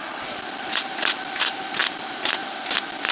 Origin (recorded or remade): remade